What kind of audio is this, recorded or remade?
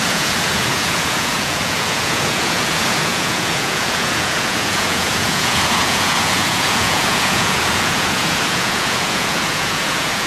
remade